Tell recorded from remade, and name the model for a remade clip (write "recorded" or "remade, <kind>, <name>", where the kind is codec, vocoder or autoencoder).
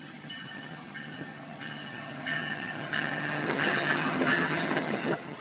remade, vocoder, HiFi-GAN